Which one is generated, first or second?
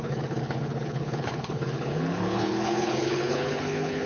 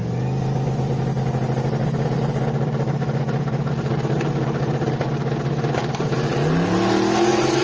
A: first